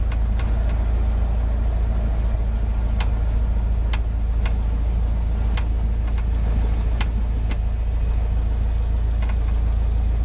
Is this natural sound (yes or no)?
yes